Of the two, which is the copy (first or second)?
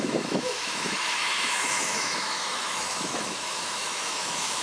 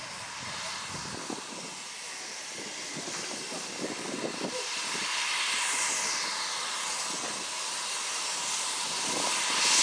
first